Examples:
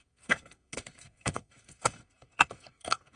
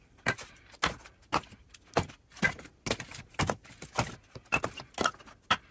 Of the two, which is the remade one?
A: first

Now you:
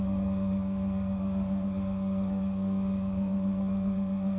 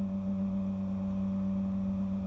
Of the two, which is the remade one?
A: first